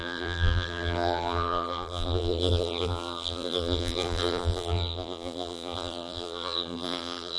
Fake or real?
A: fake